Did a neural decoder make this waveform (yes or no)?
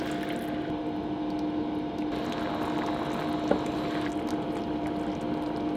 no